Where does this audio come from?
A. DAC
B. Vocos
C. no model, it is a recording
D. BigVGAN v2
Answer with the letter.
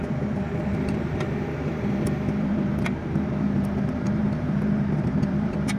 D